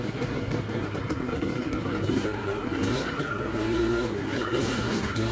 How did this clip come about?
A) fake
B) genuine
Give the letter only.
A